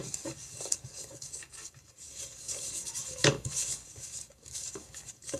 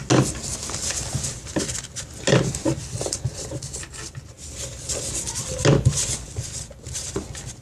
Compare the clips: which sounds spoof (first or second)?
first